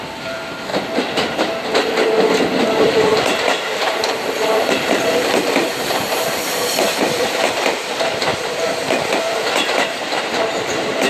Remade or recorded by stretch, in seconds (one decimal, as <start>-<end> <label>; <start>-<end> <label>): 0.0-0.7 remade; 0.7-2.6 recorded; 2.6-11.1 remade